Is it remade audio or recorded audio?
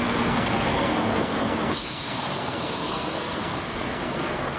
remade